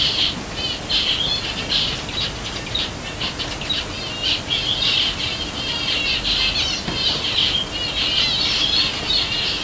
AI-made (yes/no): no